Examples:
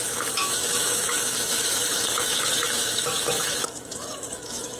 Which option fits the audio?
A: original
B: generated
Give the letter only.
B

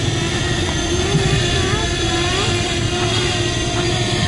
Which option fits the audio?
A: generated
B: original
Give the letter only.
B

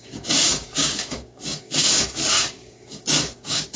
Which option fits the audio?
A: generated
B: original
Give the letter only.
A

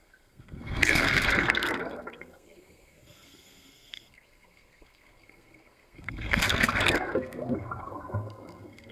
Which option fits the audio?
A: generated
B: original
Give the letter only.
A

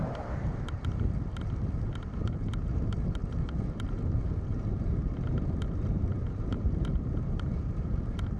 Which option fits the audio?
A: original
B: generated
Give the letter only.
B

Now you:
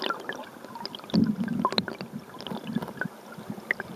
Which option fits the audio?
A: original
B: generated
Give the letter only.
A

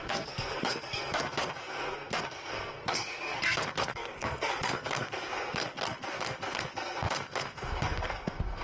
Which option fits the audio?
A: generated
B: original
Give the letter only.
A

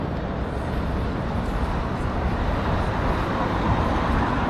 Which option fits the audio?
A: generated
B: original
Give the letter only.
B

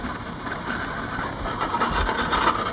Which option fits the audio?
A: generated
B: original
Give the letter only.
B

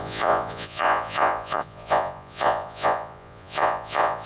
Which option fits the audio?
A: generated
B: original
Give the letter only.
A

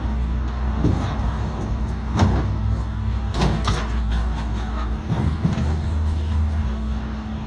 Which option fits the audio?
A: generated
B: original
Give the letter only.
A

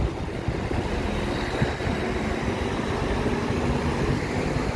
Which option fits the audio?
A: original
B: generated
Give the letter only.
A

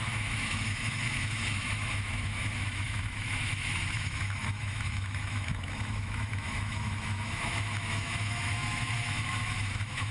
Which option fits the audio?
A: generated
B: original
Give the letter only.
A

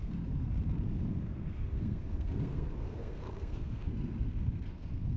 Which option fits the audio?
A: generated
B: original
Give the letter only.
A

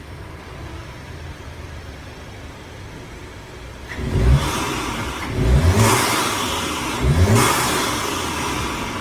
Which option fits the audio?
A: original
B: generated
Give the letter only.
A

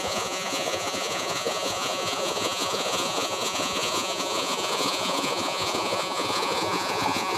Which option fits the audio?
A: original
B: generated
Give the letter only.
B